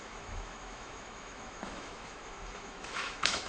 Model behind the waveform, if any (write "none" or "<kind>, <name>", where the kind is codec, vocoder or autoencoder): autoencoder, DAC-VAE